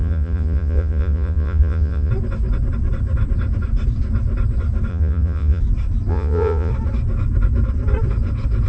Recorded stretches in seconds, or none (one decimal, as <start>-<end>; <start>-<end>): 2.1-4.9; 5.6-6.1; 6.7-8.7